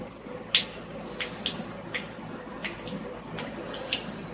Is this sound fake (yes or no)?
no